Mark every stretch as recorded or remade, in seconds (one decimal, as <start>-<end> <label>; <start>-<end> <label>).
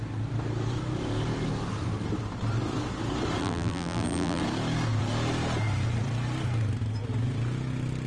0.0-3.4 recorded; 3.4-4.4 remade; 4.4-8.1 recorded